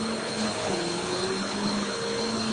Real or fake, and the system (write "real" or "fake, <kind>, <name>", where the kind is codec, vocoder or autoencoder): fake, codec, HILCodec